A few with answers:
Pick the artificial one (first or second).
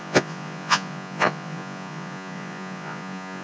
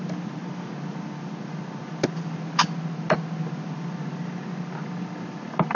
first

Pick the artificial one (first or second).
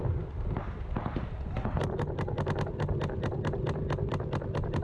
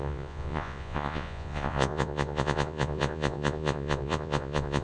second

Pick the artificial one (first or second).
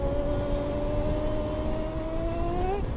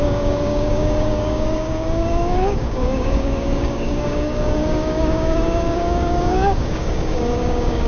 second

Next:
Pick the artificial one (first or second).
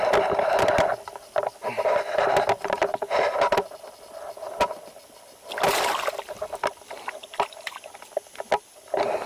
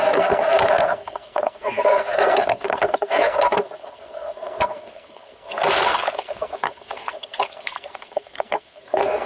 second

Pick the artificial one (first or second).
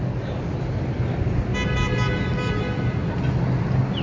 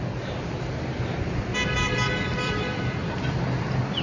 second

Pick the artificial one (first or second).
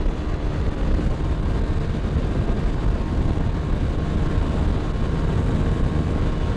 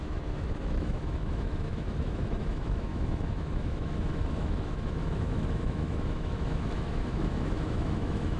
second